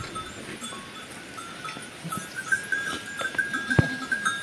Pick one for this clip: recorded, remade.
recorded